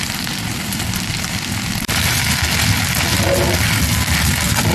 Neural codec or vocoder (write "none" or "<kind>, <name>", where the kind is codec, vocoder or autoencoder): none